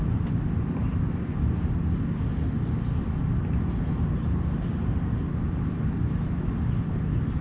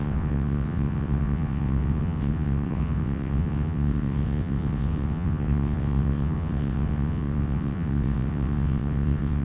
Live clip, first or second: first